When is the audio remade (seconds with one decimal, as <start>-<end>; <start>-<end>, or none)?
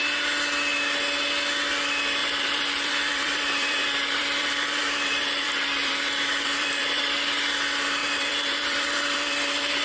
2.2-7.0; 8.0-9.8